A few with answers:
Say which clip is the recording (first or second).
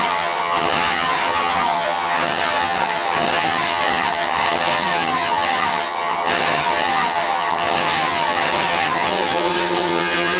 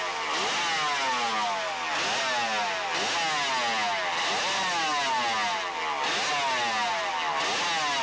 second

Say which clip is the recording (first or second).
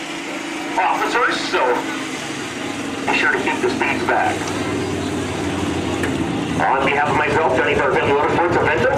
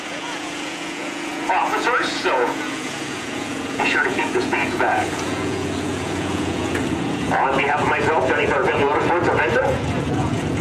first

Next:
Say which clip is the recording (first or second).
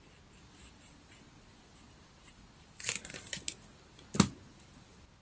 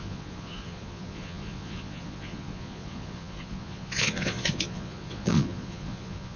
first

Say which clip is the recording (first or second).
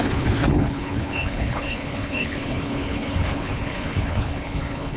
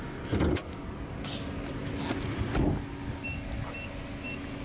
second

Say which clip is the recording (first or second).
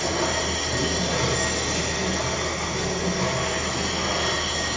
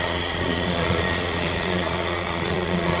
first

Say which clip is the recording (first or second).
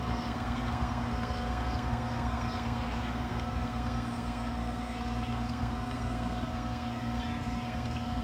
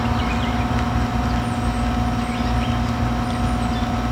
second